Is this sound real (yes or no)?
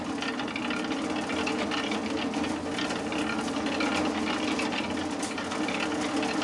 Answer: yes